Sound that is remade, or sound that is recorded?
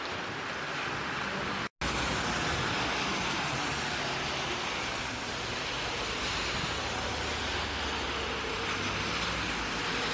recorded